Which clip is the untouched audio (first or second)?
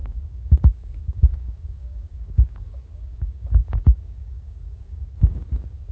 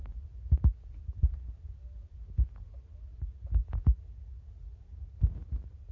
second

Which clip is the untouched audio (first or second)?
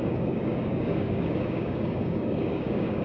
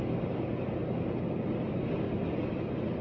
second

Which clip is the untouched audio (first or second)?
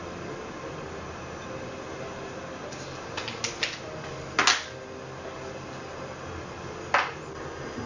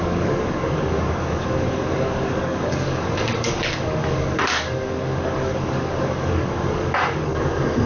first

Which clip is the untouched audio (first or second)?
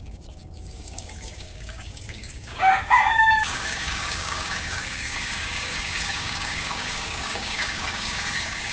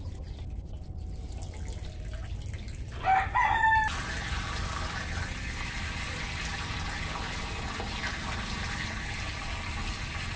second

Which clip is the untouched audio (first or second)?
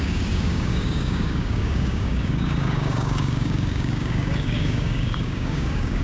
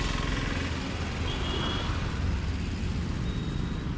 second